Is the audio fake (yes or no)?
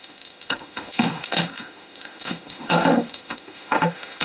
yes